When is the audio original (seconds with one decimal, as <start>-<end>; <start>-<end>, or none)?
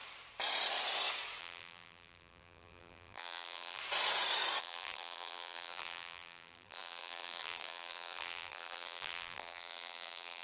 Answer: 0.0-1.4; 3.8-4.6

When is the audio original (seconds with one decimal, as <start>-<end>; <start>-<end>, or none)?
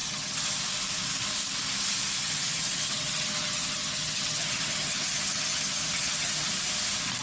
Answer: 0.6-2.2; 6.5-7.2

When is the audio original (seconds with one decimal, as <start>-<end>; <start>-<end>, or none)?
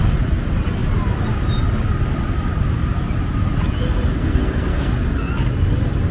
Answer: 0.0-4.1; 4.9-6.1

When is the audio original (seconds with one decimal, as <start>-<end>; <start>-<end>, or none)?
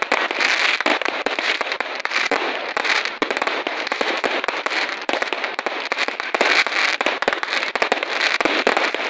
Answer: 0.0-0.9; 5.8-9.1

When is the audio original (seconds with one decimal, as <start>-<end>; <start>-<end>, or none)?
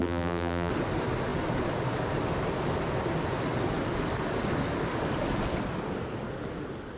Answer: 0.7-7.0